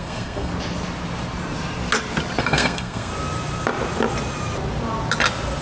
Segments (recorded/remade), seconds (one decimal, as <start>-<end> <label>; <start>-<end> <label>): 0.0-0.5 remade; 0.5-2.4 recorded; 2.4-3.1 remade; 3.1-5.6 recorded

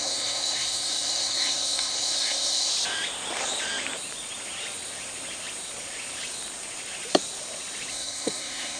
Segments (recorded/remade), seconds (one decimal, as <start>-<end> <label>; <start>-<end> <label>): 0.0-2.7 remade; 2.7-7.9 recorded; 7.9-8.8 remade

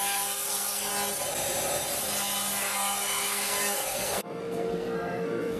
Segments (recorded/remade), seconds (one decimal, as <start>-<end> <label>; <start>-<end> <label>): 0.0-0.9 remade; 0.9-2.6 recorded; 2.6-5.6 remade